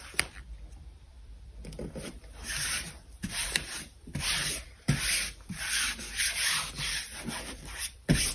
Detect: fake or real fake